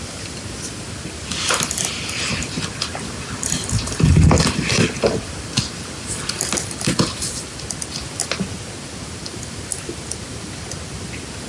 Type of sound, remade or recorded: recorded